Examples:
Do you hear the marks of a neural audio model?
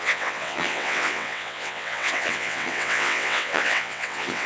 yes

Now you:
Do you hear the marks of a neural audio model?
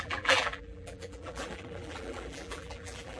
yes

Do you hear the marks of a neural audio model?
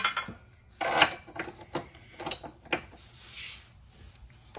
no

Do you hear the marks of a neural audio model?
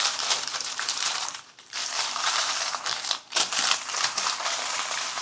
yes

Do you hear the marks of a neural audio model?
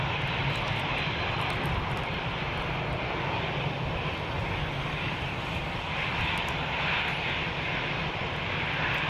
yes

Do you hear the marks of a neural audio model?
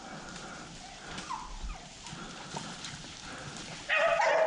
no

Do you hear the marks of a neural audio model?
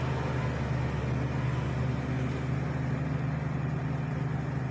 no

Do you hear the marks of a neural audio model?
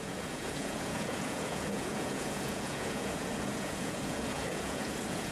yes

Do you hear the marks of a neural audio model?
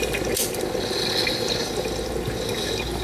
no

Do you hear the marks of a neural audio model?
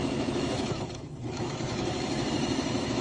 yes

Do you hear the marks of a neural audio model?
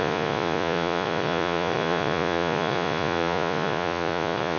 yes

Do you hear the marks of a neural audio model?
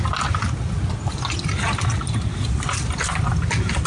no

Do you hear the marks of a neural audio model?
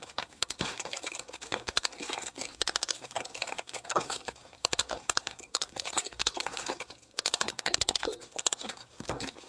yes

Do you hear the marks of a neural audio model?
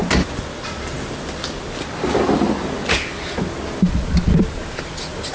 no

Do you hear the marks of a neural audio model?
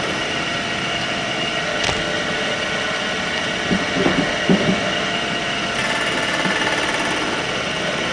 no